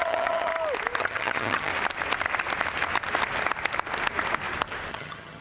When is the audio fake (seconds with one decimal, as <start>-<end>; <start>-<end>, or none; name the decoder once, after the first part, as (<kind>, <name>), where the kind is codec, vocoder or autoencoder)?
0.0-0.5 (vocoder, HiFi-GAN); 1.0-1.7; 4.9-5.4